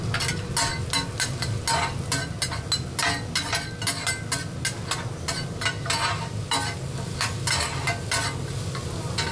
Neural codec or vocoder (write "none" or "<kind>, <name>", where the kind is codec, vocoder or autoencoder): none